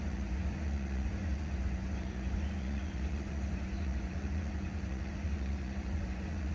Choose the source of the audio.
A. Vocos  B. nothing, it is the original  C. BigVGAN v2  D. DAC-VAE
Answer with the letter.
A